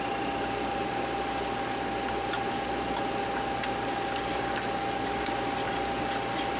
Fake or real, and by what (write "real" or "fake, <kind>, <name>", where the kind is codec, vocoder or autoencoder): real